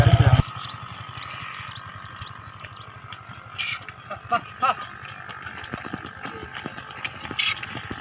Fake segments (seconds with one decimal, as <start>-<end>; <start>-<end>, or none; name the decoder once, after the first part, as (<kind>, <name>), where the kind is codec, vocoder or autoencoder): none